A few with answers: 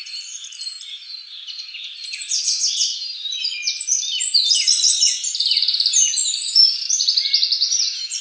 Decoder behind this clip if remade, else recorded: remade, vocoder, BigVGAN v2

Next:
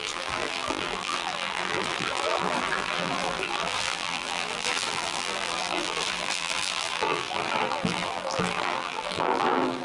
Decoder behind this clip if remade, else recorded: remade, vocoder, BigVGAN v2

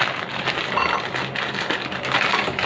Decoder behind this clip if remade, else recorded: recorded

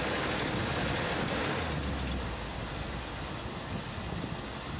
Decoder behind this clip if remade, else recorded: recorded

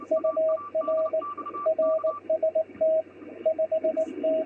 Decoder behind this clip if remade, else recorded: recorded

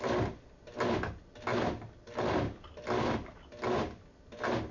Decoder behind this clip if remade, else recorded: recorded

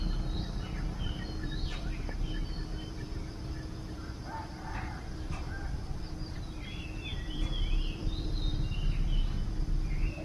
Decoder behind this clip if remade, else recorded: remade, vocoder, BigVGAN v2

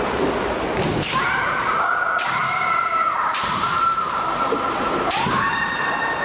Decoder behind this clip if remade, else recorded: remade, vocoder, BigVGAN v2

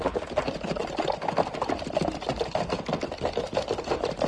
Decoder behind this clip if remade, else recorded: recorded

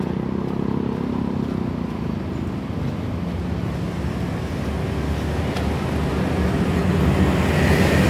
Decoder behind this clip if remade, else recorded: recorded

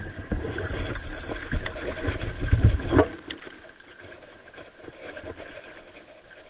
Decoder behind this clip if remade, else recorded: remade, vocoder, BigVGAN v2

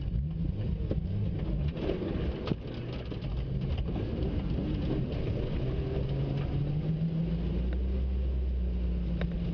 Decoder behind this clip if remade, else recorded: recorded